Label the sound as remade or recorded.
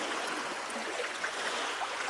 remade